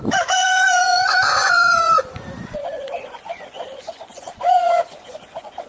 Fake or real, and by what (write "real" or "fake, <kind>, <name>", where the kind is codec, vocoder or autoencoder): fake, vocoder, Vocos